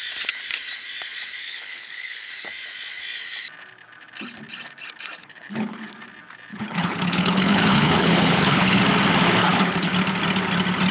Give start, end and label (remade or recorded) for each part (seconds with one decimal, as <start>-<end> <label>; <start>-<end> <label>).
0.0-1.4 recorded; 1.4-2.3 remade; 2.3-5.2 recorded; 5.2-5.9 remade; 5.9-6.5 recorded; 6.5-8.8 remade; 8.8-9.4 recorded; 9.4-9.9 remade; 9.9-10.9 recorded